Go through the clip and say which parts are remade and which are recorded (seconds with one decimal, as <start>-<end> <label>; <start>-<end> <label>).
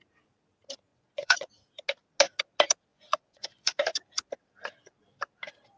0.0-0.9 recorded; 0.9-1.5 remade; 1.5-2.9 recorded; 2.9-3.7 remade; 3.7-5.8 recorded